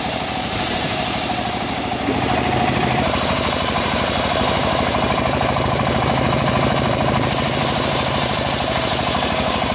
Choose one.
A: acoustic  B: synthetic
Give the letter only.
B